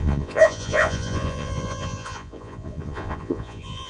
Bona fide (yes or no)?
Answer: no